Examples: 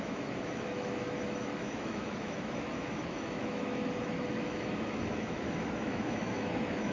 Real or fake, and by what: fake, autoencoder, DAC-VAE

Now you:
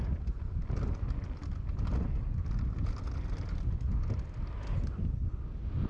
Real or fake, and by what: real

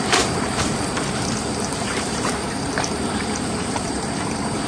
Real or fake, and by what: fake, vocoder, BigVGAN v2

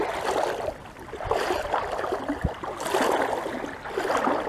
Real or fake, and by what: real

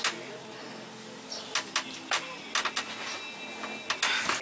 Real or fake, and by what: real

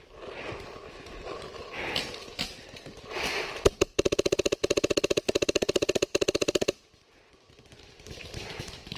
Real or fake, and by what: real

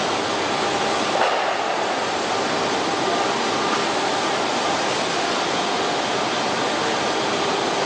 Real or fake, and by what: real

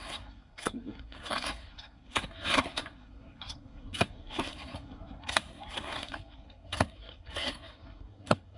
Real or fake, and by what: fake, codec, SNAC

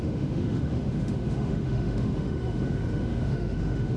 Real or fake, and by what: fake, autoencoder, DAC-VAE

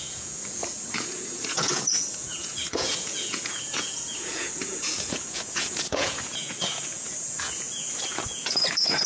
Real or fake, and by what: fake, vocoder, Vocos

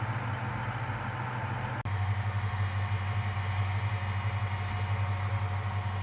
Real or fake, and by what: real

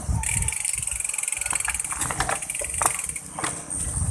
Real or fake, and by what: real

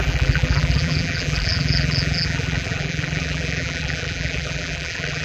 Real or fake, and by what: fake, vocoder, BigVGAN v2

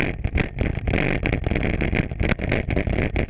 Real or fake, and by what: real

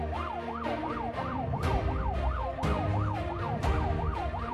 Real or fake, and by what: fake, vocoder, BigVGAN v2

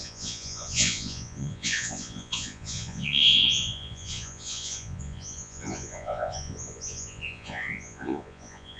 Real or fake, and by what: fake, vocoder, Vocos